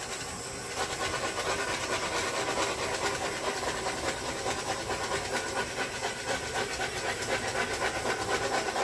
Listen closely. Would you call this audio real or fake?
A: real